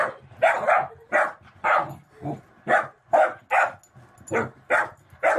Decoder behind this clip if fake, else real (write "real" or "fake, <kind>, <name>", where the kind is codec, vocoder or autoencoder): real